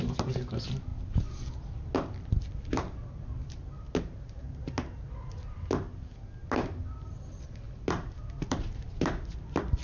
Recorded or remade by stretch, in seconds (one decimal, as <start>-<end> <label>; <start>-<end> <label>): 0.0-9.8 recorded